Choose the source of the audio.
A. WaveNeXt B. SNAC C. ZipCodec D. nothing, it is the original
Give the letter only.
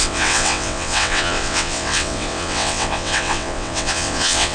A